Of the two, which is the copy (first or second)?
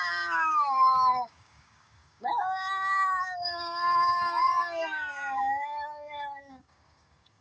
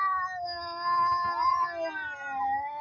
first